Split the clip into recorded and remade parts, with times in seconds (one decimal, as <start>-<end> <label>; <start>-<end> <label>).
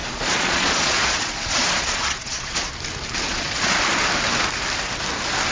0.0-2.7 remade; 2.7-3.3 recorded; 3.3-3.8 remade; 3.8-5.5 recorded